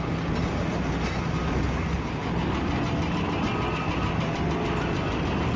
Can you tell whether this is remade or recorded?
recorded